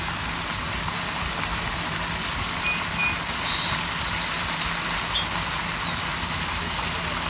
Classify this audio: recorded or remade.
recorded